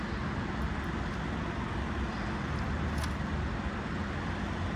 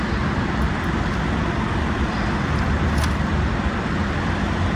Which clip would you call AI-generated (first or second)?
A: second